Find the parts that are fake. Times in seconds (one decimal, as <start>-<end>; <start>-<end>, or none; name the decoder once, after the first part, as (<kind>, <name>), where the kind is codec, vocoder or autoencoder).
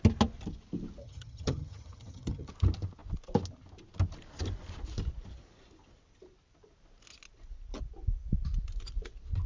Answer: 1.0-2.5 (vocoder, HiFi-GAN)